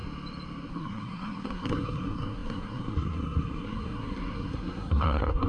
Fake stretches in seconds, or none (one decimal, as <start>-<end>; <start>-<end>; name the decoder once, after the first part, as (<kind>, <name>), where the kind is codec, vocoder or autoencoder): 0.7-5.5 (codec, SNAC)